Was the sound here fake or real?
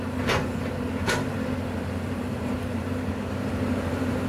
fake